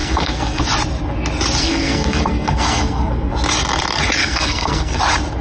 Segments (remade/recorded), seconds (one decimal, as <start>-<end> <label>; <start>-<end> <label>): 0.0-0.6 remade; 0.6-1.6 recorded; 1.6-3.3 remade; 3.3-4.2 recorded; 4.2-5.0 remade; 5.0-5.4 recorded